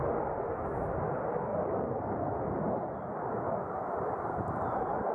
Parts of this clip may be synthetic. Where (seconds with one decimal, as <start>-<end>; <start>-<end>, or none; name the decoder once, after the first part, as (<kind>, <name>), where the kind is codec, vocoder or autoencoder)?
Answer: 1.5-4.6 (vocoder, BigVGAN v2)